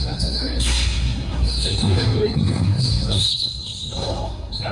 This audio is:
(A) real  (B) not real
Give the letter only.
B